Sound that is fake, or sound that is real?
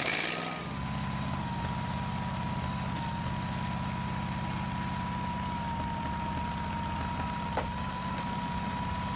real